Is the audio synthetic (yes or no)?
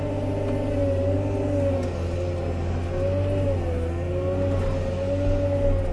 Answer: no